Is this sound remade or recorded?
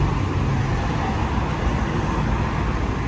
recorded